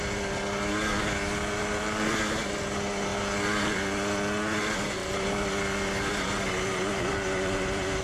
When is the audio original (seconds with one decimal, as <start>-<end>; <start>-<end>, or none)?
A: 0.0-1.6; 2.2-8.0